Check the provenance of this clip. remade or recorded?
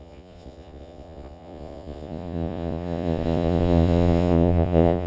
remade